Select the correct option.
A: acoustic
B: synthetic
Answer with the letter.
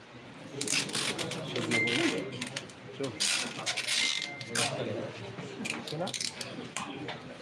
A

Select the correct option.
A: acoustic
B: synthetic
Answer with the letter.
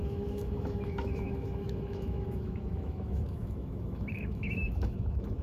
B